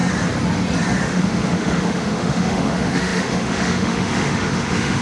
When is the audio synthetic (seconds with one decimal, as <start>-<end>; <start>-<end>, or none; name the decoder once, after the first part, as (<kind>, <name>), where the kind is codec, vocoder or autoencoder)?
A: 1.0-5.0 (autoencoder, DAC-VAE)

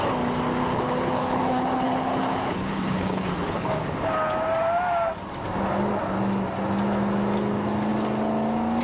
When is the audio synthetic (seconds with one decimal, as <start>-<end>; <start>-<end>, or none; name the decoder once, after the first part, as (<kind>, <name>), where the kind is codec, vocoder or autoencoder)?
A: 0.6-3.7 (codec, HILCodec)

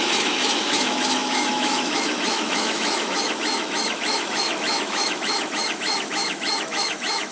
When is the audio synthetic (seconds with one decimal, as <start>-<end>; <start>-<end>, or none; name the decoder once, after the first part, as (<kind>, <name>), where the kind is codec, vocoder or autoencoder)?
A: 0.0-7.3 (autoencoder, DAC-VAE)

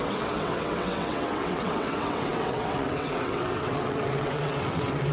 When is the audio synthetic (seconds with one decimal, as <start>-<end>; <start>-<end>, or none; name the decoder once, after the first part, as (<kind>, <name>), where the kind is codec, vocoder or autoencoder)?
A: 0.0-5.1 (vocoder, WaveNeXt)

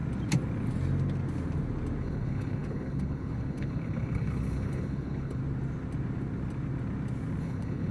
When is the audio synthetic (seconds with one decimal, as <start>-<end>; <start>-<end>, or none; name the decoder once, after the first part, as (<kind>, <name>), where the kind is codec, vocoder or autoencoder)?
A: 2.0-5.4 (codec, HILCodec); 7.4-7.9

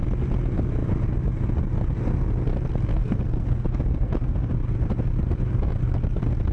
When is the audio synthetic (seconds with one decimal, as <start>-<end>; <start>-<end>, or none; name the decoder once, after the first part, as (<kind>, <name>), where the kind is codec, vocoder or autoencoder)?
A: 2.9-4.5 (codec, SNAC)

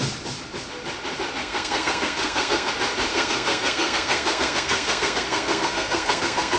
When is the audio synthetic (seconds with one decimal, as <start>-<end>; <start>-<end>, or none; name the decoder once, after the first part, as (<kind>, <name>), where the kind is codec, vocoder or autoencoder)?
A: 1.4-2.7 (codec, SNAC); 3.1-6.6